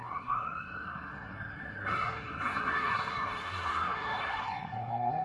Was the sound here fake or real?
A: fake